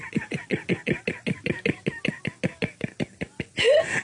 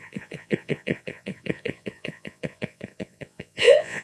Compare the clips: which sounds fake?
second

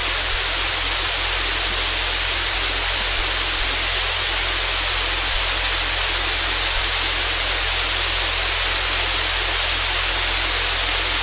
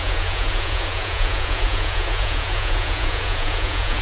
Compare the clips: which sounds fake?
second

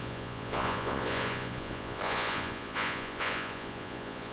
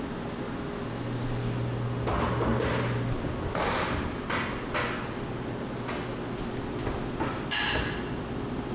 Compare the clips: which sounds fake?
first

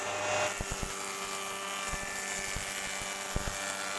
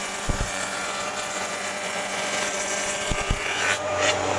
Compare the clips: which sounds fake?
second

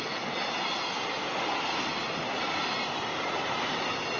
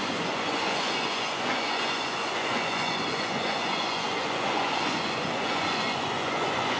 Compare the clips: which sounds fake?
second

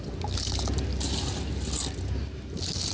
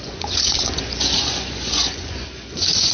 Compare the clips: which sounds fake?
second